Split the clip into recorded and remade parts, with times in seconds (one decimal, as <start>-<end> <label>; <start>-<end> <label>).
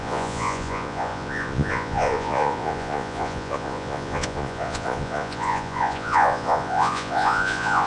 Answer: 0.0-7.9 remade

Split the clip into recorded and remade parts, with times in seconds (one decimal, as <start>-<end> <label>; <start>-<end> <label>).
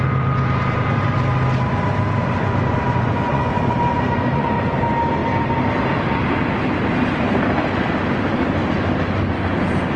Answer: 0.0-2.9 recorded; 2.9-3.5 remade; 3.5-3.9 recorded; 3.9-4.5 remade; 4.5-10.0 recorded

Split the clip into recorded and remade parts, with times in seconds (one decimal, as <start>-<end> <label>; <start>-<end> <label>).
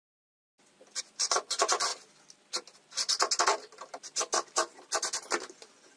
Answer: 0.0-1.0 recorded; 1.0-1.9 remade; 1.9-5.5 recorded; 5.5-6.0 remade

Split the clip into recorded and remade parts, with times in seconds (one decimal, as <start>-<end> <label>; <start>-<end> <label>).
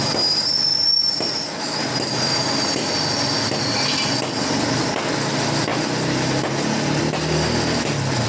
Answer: 0.0-8.3 recorded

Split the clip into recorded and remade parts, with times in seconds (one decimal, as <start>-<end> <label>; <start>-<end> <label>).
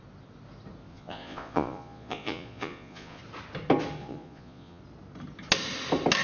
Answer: 0.0-0.9 recorded; 0.9-3.2 remade; 3.2-4.0 recorded; 4.0-4.8 remade; 4.8-6.2 recorded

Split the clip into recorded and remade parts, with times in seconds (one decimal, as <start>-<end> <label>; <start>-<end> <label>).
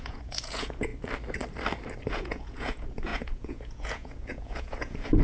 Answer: 0.0-0.9 remade; 0.9-2.1 recorded; 2.1-5.2 remade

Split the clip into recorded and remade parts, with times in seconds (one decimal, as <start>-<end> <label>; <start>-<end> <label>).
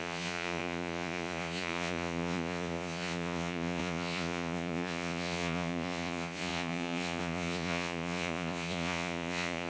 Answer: 0.0-9.7 remade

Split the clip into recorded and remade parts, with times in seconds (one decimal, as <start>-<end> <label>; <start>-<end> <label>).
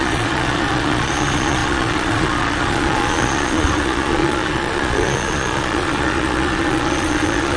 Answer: 0.0-7.6 remade